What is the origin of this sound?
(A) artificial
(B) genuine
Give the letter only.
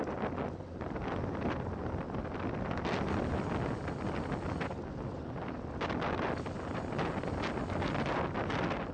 B